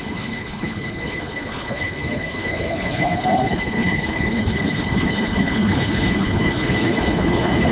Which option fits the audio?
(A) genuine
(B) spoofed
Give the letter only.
B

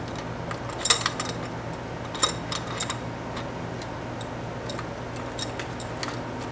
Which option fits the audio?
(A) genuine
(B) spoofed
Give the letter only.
A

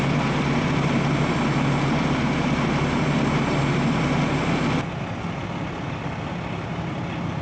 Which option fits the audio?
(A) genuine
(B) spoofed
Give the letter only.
A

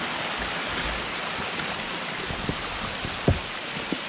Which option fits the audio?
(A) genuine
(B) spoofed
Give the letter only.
A